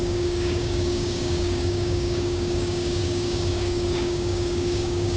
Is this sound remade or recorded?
remade